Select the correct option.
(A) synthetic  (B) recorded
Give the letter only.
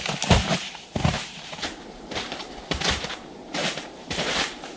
A